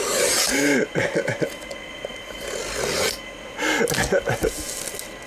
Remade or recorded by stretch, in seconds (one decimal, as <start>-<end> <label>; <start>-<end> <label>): 0.0-5.3 recorded

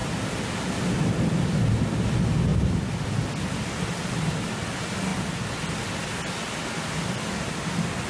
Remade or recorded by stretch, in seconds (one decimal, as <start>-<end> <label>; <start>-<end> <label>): 0.0-2.5 recorded; 2.5-4.1 remade; 4.1-8.1 recorded